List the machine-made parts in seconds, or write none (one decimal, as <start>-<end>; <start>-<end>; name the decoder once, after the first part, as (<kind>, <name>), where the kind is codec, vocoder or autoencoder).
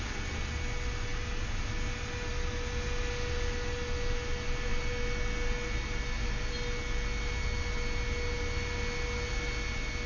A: none